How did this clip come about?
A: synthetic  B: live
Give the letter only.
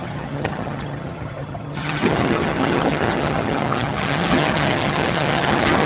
A